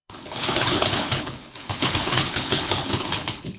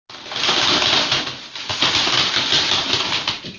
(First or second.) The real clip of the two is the second